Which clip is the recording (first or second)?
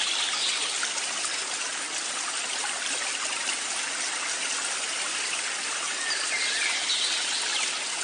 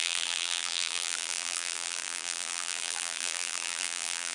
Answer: first